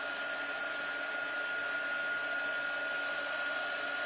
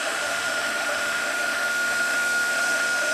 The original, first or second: first